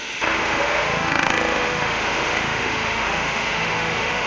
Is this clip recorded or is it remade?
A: remade